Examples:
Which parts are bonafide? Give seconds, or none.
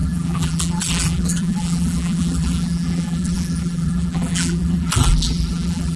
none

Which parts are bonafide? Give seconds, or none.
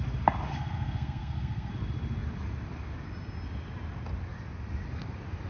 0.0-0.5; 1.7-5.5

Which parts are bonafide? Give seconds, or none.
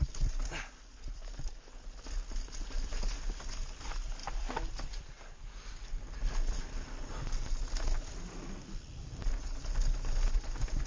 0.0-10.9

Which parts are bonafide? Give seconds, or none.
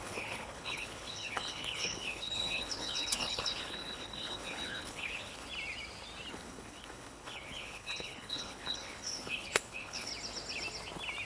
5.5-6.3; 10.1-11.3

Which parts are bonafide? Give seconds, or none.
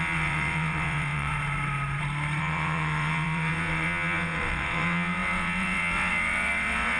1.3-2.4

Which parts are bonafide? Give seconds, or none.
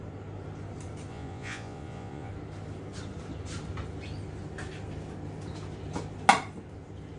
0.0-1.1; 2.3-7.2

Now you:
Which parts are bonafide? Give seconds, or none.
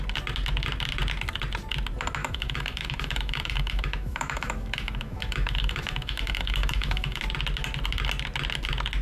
0.0-2.2; 7.2-9.0